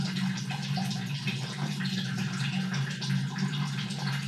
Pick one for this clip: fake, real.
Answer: real